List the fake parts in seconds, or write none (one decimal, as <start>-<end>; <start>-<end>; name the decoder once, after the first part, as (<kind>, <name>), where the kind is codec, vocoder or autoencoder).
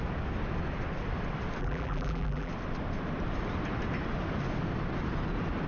1.6-2.5 (vocoder, BigVGAN v2)